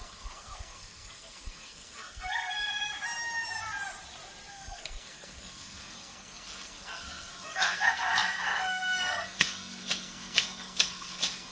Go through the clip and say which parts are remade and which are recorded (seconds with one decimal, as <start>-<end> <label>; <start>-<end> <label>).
0.0-2.7 remade; 2.7-4.5 recorded; 4.5-11.5 remade